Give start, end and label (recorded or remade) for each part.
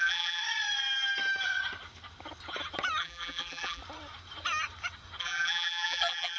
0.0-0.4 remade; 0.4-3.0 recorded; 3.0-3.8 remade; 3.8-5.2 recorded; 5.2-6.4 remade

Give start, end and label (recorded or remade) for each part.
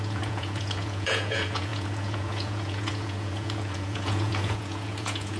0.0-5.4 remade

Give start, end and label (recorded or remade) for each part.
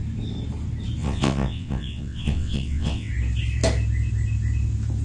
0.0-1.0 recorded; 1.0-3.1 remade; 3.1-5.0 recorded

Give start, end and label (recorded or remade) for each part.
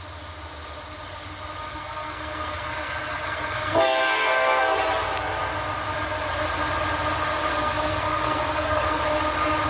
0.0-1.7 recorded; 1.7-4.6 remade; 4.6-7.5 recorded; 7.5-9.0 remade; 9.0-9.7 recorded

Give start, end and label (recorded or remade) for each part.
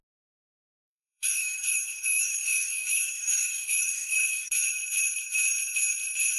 0.0-0.7 recorded; 0.7-4.5 remade; 4.5-6.4 recorded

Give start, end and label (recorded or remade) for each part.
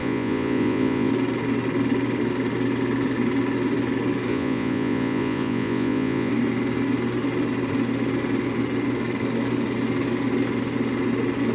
0.0-1.1 remade; 1.1-4.3 recorded; 4.3-6.3 remade; 6.3-11.5 recorded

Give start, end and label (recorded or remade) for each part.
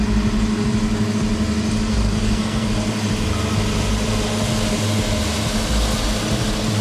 0.0-1.9 recorded; 1.9-2.7 remade; 2.7-6.8 recorded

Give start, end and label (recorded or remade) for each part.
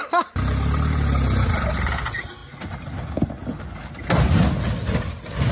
0.0-5.5 recorded